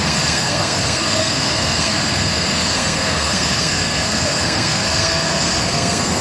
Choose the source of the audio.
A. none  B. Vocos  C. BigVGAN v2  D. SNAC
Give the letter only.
D